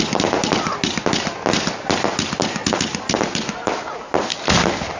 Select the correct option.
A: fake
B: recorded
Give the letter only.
B